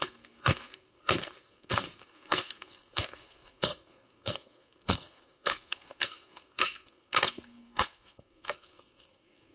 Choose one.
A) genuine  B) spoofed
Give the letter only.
B